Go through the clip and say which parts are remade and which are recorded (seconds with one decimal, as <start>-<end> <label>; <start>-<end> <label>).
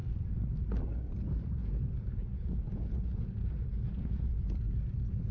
0.0-1.6 recorded; 1.6-4.8 remade; 4.8-5.3 recorded